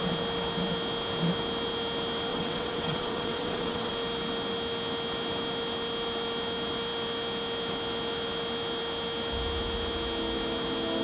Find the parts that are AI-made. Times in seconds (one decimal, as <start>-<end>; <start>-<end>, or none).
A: 2.3-3.9